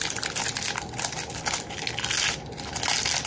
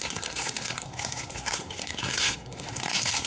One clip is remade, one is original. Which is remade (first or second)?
second